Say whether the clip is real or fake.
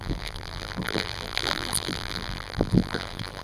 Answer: fake